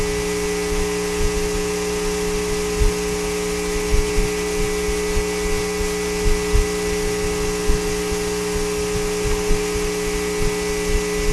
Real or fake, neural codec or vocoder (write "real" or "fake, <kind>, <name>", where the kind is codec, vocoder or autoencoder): real